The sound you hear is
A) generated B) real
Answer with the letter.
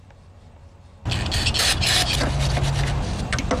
B